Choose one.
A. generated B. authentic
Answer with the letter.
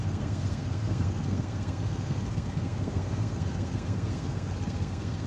A